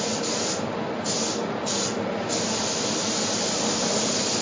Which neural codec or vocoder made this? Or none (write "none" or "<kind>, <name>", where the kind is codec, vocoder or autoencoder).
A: none